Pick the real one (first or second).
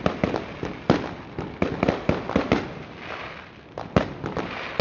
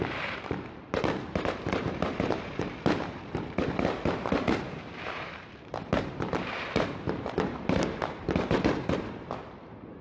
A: first